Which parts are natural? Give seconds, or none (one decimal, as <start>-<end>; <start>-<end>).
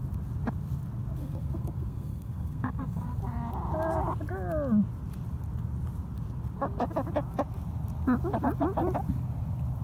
0.0-1.2; 3.2-9.8